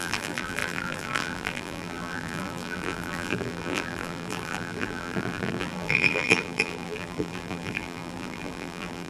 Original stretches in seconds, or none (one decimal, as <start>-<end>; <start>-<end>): none